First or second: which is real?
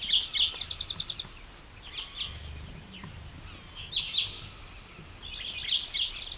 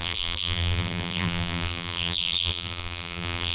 first